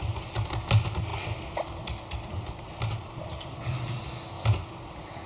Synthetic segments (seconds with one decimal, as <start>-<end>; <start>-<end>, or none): none